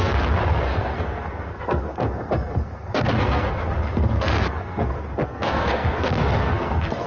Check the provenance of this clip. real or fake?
fake